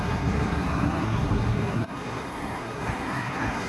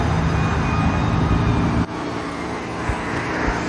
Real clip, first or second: second